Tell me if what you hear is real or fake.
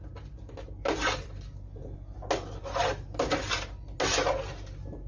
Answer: real